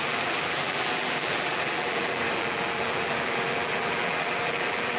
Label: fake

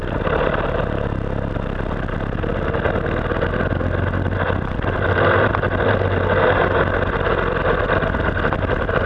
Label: real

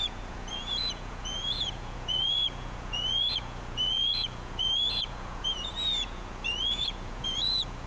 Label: fake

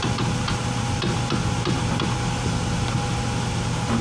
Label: real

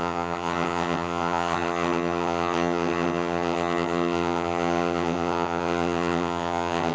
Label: fake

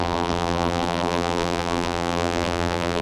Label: fake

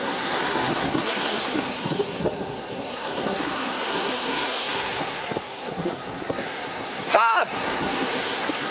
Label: fake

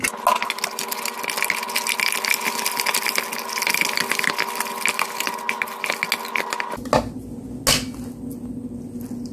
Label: real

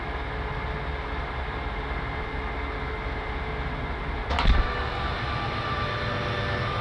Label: real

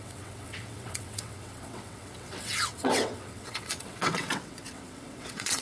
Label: fake